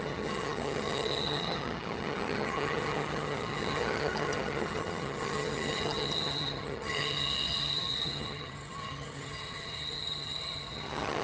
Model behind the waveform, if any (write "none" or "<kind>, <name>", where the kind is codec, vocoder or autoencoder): vocoder, HiFi-GAN